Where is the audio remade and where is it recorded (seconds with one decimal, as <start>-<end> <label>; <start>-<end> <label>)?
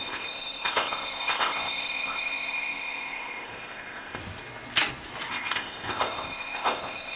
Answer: 0.0-4.2 remade; 4.2-5.3 recorded; 5.3-7.2 remade